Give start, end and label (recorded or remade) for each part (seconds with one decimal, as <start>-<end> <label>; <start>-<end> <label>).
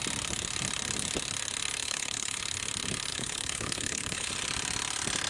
0.0-1.8 recorded; 1.8-2.4 remade; 2.4-3.1 recorded; 3.1-4.3 remade; 4.3-5.3 recorded